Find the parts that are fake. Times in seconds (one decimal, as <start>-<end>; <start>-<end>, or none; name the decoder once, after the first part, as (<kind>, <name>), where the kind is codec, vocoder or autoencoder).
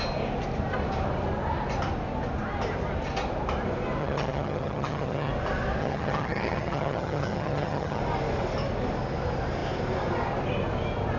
4.0-5.3 (vocoder, HiFi-GAN); 5.8-8.0